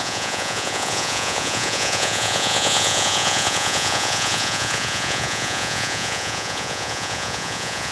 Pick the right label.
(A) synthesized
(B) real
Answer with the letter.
A